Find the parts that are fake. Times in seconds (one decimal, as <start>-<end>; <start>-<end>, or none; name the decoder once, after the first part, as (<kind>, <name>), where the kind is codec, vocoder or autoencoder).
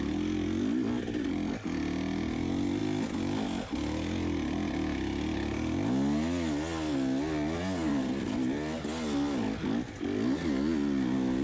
none